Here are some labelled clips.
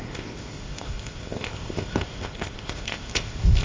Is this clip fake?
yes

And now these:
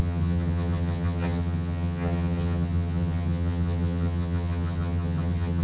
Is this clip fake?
yes